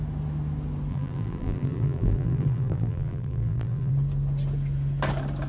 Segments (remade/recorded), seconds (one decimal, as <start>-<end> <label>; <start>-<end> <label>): 0.0-0.9 recorded; 0.9-3.9 remade; 3.9-5.5 recorded